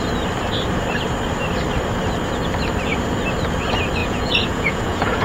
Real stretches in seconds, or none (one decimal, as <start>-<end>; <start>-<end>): 0.0-4.0